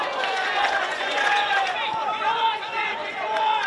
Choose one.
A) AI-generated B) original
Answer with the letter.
A